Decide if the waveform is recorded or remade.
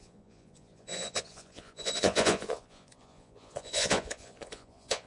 remade